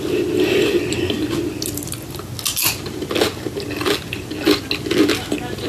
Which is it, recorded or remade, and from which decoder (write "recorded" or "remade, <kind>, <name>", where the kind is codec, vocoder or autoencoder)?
recorded